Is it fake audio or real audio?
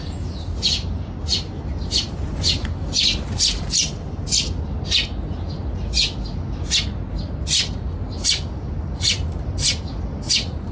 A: real